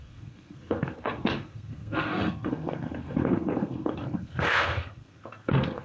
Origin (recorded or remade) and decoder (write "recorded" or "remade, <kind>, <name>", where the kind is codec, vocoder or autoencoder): remade, codec, SNAC